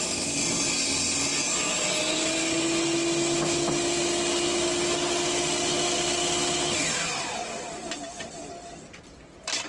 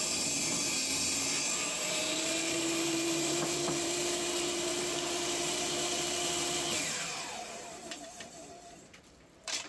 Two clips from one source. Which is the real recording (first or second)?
first